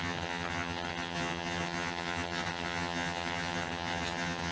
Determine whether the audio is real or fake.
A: fake